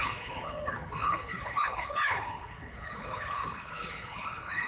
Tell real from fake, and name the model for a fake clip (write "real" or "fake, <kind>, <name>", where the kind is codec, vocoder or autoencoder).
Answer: fake, codec, HILCodec